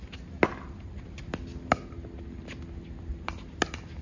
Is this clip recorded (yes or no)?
yes